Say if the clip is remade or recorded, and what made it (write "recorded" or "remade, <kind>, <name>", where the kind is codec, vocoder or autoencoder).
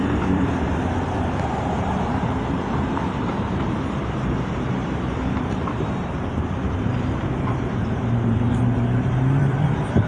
remade, vocoder, BigVGAN v2